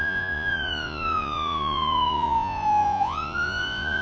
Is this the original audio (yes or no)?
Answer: no